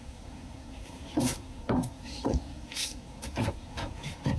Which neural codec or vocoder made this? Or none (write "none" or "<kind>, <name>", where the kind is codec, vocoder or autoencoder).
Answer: codec, SNAC